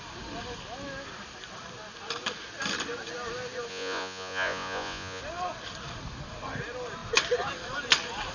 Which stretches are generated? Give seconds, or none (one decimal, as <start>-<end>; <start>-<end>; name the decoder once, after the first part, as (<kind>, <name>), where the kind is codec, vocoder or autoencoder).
3.7-5.2 (vocoder, Vocos)